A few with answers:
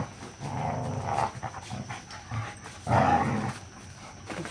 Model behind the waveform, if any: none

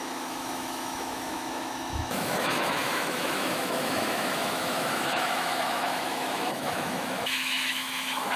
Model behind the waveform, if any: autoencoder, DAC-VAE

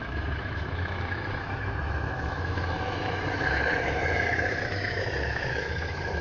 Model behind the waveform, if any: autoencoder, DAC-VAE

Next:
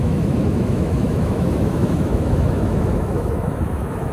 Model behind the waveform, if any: autoencoder, DAC-VAE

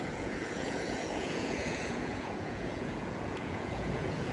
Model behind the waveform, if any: vocoder, Vocos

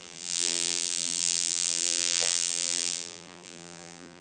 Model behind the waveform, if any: vocoder, BigVGAN v2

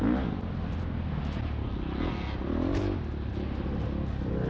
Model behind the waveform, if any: none